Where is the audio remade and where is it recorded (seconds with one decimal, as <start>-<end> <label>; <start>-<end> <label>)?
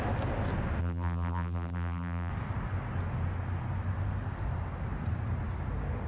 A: 0.0-0.8 recorded; 0.8-2.3 remade; 2.3-6.1 recorded